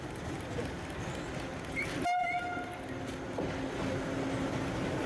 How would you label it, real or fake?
real